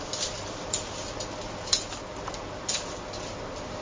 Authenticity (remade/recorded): recorded